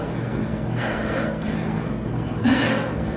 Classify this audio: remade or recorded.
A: remade